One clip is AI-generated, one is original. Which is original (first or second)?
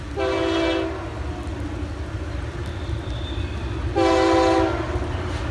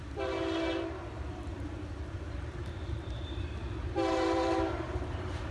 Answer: first